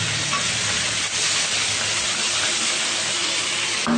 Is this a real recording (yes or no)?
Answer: yes